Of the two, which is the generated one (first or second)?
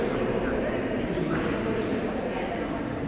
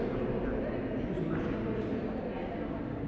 first